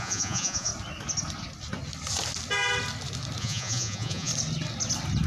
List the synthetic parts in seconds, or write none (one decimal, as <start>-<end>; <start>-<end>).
0.0-0.7; 3.4-4.3